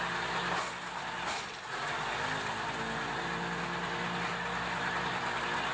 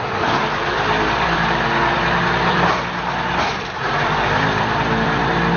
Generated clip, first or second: second